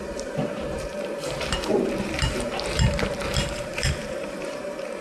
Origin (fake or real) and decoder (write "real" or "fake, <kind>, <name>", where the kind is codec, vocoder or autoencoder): fake, vocoder, BigVGAN v2